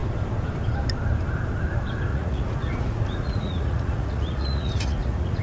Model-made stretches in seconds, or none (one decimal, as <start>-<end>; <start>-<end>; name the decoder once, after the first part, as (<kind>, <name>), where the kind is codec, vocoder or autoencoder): 2.1-5.4 (vocoder, Vocos)